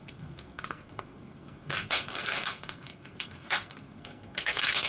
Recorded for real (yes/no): no